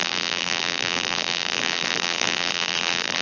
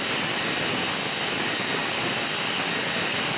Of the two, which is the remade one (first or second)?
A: first